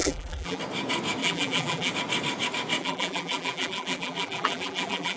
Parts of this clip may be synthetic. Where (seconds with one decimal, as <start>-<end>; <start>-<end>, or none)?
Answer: 0.0-0.6; 1.2-1.9; 2.8-5.2